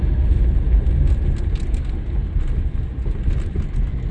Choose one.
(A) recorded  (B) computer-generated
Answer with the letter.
A